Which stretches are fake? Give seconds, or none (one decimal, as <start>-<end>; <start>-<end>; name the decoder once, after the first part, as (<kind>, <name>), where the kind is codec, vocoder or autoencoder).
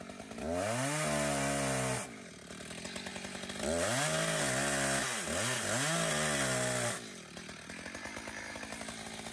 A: none